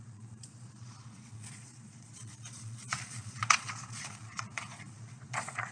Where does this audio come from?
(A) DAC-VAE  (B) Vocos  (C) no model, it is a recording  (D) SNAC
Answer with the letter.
B